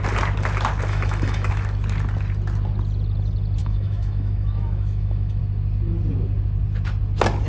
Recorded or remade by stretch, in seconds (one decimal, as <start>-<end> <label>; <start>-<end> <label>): 0.0-0.9 recorded; 0.9-1.5 remade; 1.5-3.6 recorded; 3.6-5.4 remade; 5.4-7.5 recorded

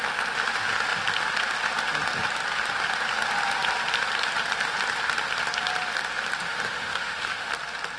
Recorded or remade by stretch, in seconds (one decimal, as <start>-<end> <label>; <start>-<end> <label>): 0.0-6.5 recorded; 6.5-7.5 remade; 7.5-8.0 recorded

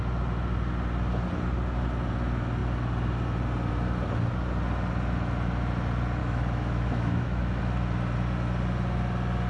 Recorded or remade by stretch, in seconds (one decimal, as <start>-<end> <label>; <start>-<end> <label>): 0.0-6.2 recorded; 6.2-7.6 remade; 7.6-9.5 recorded

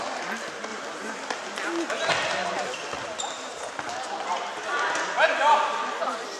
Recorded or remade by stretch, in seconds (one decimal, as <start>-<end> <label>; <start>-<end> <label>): 0.0-6.4 recorded